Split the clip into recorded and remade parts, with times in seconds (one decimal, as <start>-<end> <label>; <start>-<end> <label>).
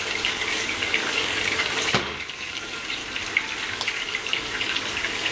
0.0-3.0 remade; 3.0-3.7 recorded; 3.7-5.3 remade